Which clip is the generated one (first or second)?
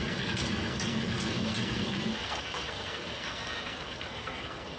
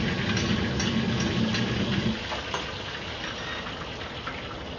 first